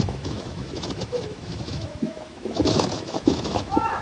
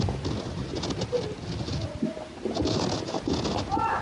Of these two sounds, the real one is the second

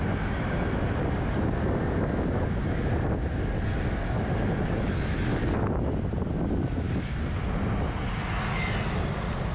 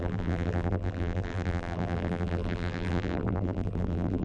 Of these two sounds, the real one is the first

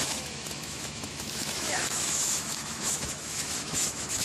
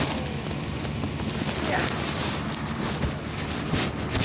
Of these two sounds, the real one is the second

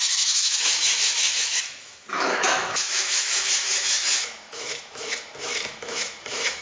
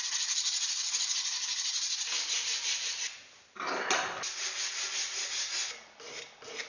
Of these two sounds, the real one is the second